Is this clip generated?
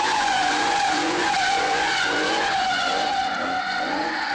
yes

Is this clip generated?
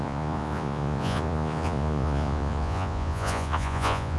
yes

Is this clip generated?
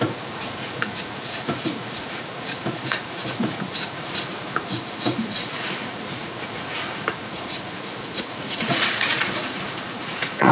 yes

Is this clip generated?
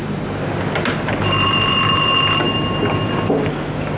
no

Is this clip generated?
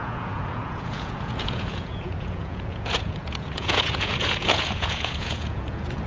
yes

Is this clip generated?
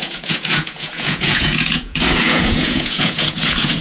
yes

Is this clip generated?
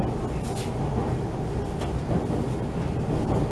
no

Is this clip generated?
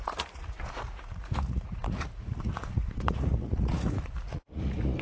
yes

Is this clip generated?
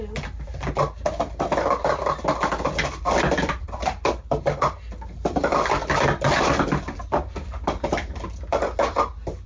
no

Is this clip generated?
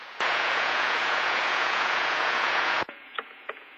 yes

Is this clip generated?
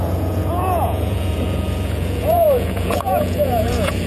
yes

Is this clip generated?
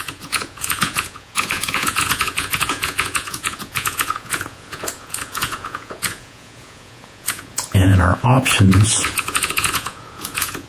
yes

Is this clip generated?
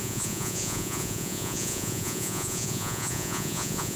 yes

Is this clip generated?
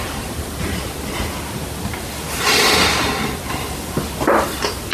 no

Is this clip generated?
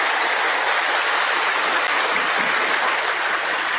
no